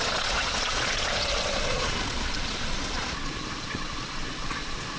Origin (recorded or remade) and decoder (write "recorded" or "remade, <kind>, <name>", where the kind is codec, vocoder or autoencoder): remade, vocoder, Vocos